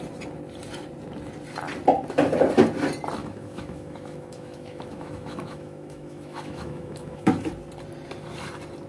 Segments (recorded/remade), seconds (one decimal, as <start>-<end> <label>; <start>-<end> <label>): 0.0-3.2 recorded; 3.2-7.3 remade; 7.3-8.9 recorded